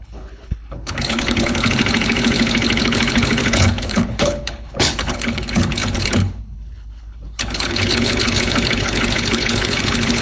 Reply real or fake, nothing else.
fake